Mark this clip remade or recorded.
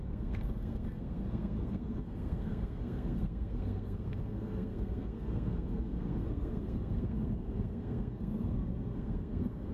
remade